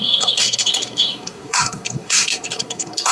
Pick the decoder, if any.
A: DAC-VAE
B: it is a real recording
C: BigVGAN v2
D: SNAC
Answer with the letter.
D